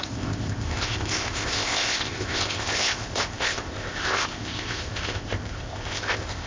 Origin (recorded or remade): remade